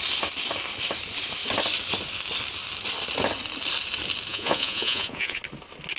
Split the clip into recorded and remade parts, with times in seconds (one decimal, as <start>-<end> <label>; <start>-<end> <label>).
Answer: 0.0-4.3 recorded; 4.3-5.4 remade; 5.4-6.0 recorded